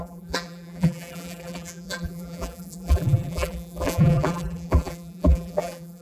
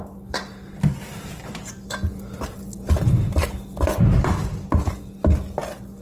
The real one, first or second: second